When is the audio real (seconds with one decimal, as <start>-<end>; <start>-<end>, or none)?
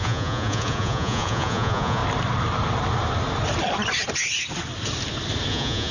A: 2.0-5.5